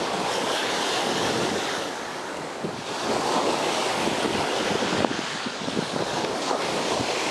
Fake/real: fake